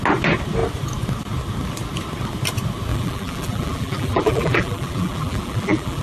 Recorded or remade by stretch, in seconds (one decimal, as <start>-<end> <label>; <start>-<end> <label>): 0.0-2.9 recorded; 2.9-6.0 remade